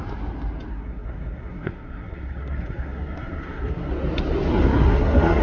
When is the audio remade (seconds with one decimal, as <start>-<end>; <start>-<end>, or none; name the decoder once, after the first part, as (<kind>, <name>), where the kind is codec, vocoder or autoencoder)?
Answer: 0.7-3.9 (codec, SNAC); 4.5-5.4